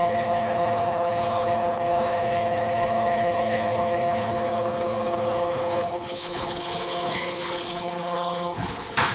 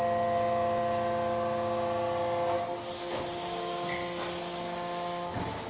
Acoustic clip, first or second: second